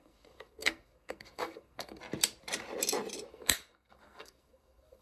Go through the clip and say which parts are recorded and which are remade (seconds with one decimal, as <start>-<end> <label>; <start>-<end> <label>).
0.0-2.0 remade; 2.0-3.3 recorded; 3.3-5.0 remade

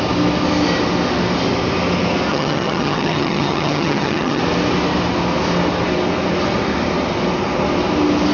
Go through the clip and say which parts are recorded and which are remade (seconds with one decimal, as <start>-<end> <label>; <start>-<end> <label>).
0.0-2.3 recorded; 2.3-4.4 remade; 4.4-8.3 recorded

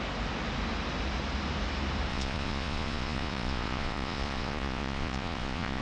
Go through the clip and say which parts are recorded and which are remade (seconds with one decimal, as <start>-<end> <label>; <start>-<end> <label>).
0.0-2.1 recorded; 2.1-5.8 remade

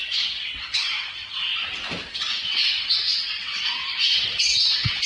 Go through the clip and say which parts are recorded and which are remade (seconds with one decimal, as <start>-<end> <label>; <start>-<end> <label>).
0.0-0.6 recorded; 0.6-1.5 remade; 1.5-2.1 recorded; 2.1-5.1 remade